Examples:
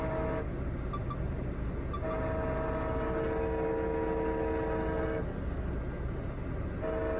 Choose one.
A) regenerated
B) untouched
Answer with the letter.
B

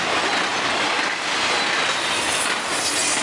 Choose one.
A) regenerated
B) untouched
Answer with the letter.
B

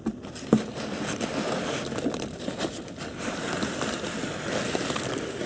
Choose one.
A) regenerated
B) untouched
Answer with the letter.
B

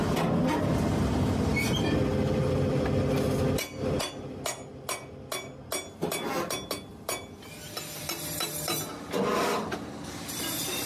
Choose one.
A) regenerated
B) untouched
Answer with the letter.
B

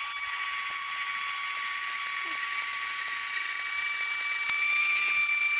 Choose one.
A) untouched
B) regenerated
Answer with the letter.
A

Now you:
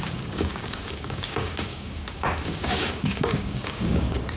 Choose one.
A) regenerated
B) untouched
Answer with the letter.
A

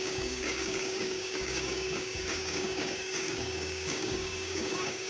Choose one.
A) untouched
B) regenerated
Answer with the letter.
B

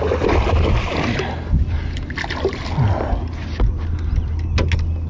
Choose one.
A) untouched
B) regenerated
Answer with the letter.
A